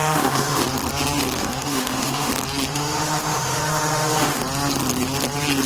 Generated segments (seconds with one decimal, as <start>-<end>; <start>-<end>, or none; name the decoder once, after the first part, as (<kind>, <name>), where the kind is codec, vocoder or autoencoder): 0.0-0.6 (autoencoder, DAC-VAE); 1.4-2.3; 2.7-4.4